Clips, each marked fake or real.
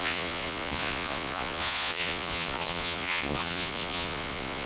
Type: fake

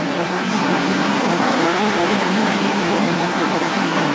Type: fake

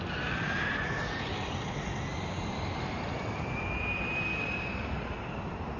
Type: real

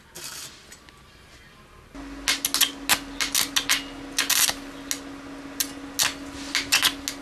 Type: real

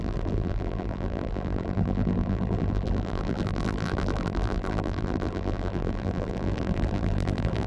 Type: fake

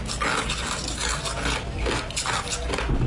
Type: real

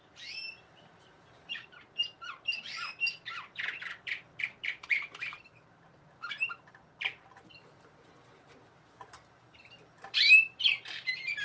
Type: fake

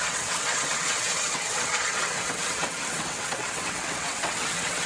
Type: fake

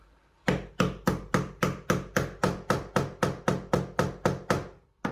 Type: real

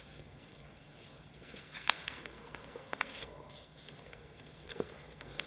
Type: fake